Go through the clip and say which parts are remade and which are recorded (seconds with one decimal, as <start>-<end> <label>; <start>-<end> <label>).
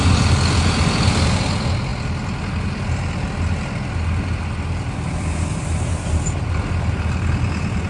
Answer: 0.0-7.9 recorded